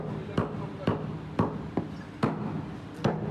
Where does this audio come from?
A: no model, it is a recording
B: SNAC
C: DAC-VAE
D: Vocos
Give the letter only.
A